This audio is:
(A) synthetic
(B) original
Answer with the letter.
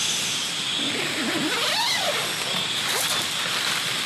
B